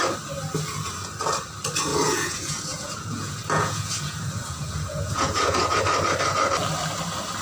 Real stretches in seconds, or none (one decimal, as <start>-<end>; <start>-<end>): 0.0-1.9; 5.8-7.4